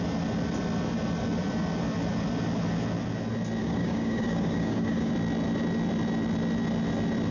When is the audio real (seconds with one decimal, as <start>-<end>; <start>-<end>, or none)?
0.0-3.6; 5.1-7.3